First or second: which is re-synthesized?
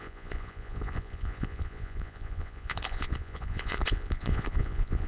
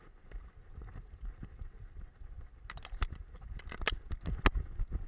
first